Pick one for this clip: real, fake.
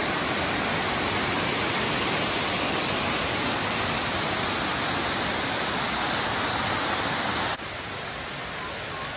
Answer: real